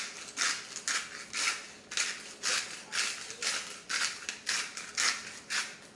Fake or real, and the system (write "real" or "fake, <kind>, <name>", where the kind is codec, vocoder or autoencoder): real